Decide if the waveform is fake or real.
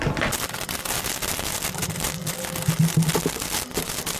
real